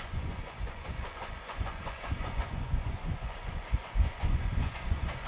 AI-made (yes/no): yes